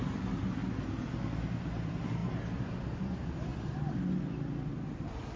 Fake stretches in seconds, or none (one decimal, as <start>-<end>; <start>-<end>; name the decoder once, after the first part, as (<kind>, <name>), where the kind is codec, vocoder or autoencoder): 0.0-0.6 (vocoder, BigVGAN v2); 1.3-3.5; 4.8-5.4